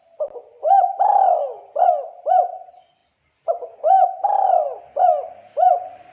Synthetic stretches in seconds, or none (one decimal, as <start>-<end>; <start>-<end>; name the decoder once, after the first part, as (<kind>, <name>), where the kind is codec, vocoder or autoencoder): none